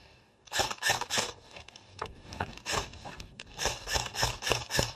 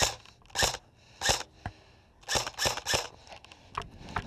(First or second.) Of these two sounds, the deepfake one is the first